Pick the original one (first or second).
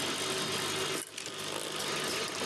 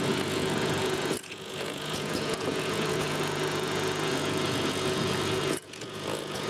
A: first